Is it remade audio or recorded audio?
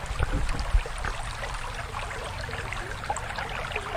recorded